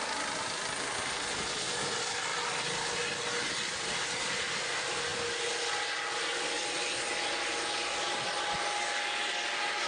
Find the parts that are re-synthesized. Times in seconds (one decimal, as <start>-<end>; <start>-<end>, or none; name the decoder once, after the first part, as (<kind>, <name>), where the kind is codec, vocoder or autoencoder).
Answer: none